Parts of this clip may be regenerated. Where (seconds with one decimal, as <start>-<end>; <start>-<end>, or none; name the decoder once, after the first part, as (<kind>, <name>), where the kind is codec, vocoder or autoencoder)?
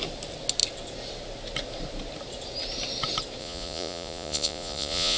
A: 3.4-5.2 (vocoder, Vocos)